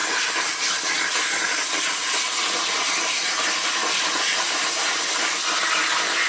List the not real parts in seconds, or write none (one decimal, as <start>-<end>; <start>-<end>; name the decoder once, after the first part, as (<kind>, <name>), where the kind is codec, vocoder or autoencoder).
none